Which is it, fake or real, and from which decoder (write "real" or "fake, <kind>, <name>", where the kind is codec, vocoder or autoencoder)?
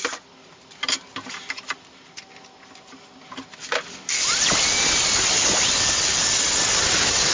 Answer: real